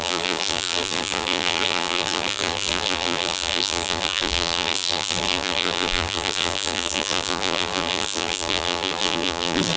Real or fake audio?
fake